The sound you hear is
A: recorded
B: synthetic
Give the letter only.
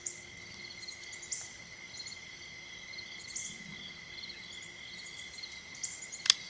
A